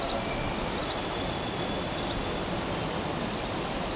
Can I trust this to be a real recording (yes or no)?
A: yes